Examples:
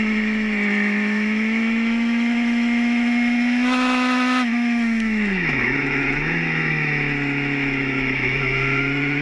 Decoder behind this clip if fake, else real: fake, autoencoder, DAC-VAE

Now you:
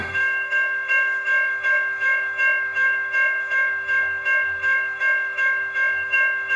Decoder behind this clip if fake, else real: fake, autoencoder, DAC-VAE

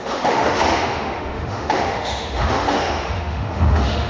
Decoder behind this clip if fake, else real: fake, autoencoder, DAC-VAE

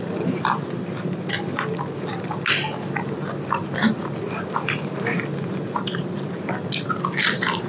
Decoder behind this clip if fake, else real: real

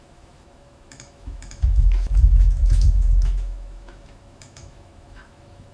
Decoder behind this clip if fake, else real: fake, autoencoder, DAC-VAE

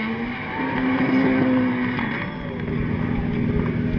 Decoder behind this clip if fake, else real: real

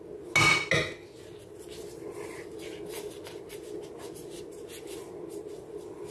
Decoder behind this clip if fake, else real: real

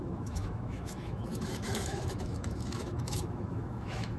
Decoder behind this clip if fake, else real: fake, autoencoder, DAC-VAE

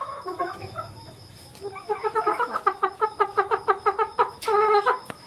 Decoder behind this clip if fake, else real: fake, autoencoder, DAC-VAE